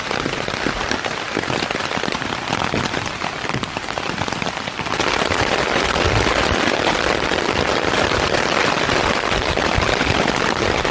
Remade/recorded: remade